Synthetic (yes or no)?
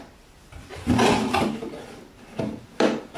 no